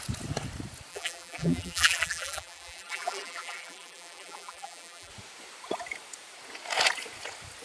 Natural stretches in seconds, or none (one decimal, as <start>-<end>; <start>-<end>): 0.0-0.9; 5.1-7.6